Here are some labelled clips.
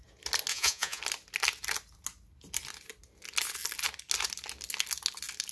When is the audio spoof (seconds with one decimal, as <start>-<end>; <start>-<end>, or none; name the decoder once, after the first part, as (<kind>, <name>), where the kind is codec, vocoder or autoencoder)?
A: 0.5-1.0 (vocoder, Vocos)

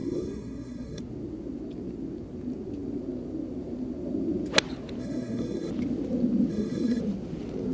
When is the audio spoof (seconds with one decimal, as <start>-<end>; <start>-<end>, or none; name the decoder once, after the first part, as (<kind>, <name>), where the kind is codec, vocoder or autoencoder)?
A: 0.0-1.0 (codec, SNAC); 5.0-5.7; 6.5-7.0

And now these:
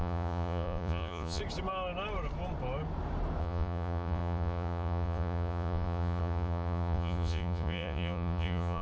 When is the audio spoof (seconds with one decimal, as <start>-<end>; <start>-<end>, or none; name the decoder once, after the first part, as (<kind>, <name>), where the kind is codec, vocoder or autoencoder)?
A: 0.0-1.4 (vocoder, Vocos); 3.4-8.8

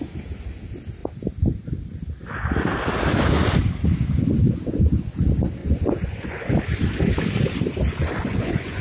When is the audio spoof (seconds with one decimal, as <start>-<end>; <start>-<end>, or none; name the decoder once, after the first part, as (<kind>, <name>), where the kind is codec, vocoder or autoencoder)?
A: 5.6-6.5 (vocoder, Vocos); 8.0-8.8